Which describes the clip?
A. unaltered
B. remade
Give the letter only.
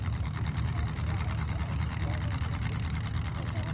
A